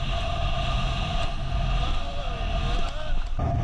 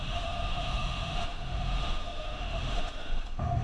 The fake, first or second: second